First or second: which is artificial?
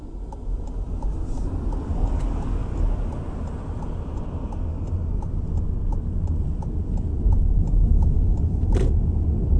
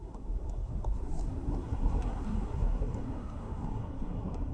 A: second